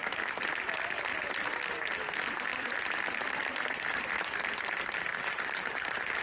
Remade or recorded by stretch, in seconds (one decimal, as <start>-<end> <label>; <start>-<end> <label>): 0.0-5.1 recorded; 5.1-6.2 remade